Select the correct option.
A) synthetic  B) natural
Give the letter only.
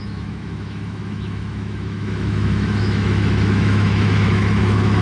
A